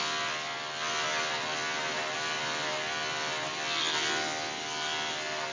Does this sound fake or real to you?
real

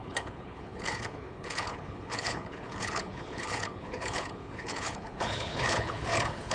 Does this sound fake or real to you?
fake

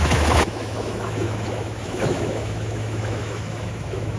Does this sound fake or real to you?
fake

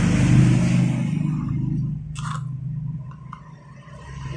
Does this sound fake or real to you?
real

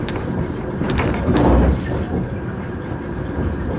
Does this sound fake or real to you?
fake